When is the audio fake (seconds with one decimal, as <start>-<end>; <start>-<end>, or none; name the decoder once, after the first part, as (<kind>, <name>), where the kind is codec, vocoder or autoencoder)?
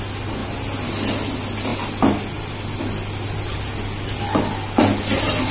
none